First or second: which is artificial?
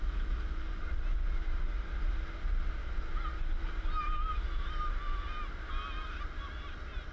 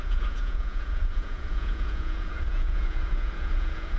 second